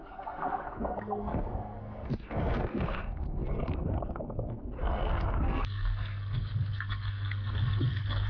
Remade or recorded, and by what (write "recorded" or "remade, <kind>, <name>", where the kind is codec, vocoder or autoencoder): remade, codec, SNAC